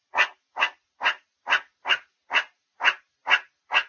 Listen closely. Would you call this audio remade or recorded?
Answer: recorded